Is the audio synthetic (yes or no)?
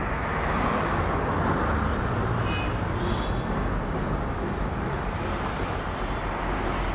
no